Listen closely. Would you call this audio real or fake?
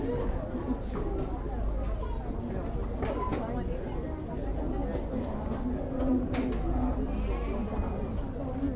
real